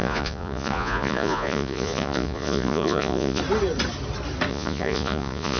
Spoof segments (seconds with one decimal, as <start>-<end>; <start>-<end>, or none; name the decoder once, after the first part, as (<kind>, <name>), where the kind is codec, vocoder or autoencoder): 0.0-3.4 (vocoder, Vocos); 4.5-5.6

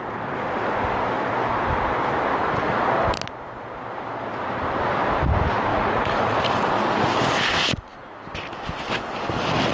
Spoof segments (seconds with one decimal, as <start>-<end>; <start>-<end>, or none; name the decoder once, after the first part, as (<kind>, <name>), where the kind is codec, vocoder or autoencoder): 2.4-2.9 (vocoder, Vocos); 5.7-6.7